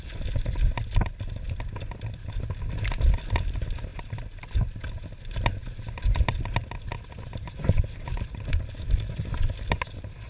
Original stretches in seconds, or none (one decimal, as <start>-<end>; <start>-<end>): 0.0-10.3